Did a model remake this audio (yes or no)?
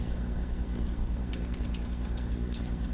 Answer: yes